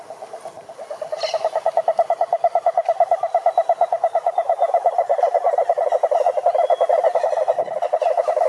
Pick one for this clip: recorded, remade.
recorded